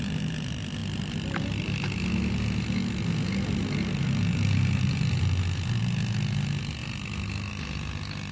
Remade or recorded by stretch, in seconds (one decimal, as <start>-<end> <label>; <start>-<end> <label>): 0.0-8.3 recorded